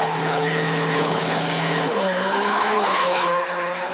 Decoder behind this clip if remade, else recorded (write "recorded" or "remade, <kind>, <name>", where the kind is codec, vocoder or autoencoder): remade, codec, HILCodec